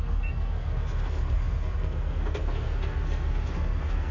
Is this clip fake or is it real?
fake